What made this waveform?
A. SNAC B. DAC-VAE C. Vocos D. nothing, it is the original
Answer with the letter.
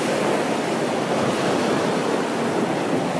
D